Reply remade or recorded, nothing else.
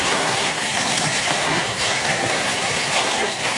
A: remade